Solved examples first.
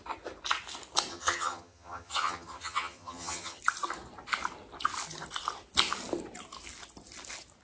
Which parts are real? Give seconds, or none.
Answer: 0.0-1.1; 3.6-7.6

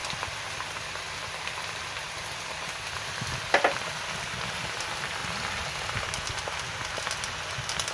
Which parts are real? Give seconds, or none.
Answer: 0.0-7.9

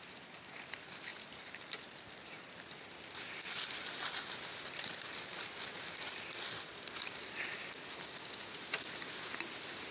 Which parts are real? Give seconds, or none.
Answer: 0.0-9.9

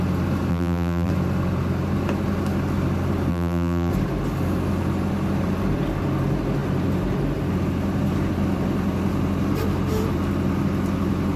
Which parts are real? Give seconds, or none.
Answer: 0.0-0.5; 1.1-3.3; 3.9-11.4

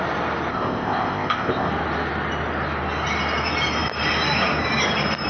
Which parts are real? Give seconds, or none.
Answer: 0.0-0.5; 1.7-5.3

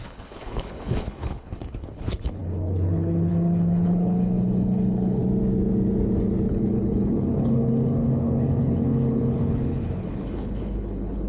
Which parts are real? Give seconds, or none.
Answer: 5.2-6.5

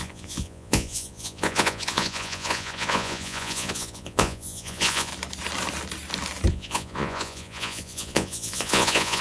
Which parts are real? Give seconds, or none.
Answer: 5.1-6.5

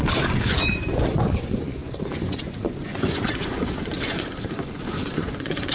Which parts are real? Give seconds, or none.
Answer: none